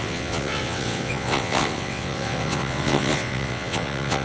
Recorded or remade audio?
remade